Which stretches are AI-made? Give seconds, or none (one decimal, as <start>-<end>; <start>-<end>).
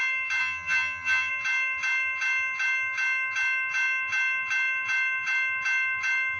0.4-1.3